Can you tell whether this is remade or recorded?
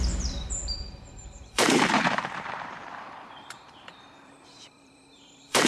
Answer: remade